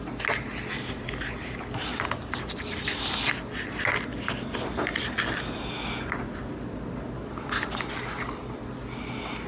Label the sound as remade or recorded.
recorded